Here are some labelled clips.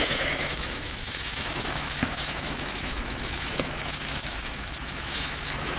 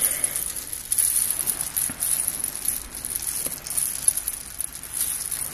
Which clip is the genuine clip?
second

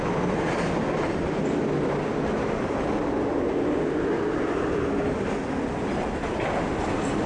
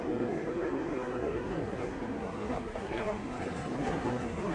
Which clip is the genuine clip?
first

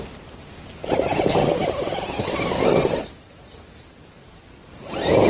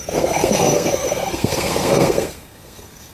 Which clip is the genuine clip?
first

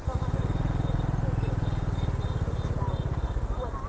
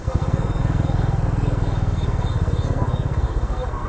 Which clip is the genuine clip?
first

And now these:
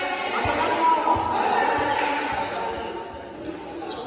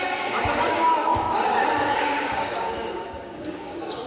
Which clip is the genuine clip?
first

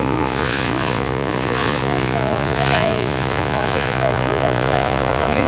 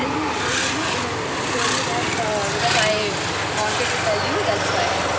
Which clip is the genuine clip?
second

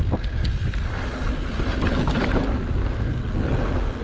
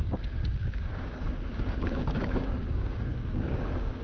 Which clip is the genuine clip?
first